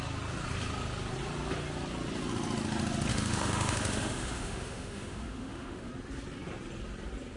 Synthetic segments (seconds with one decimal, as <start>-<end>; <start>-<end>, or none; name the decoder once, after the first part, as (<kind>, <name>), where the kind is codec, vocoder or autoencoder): 3.1-5.9 (autoencoder, DAC-VAE)